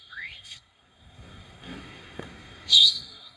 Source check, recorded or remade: remade